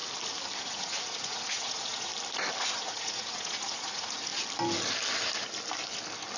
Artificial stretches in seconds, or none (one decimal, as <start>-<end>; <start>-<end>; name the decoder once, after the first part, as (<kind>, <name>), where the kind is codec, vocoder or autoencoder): 0.6-2.1 (vocoder, Vocos); 2.6-4.3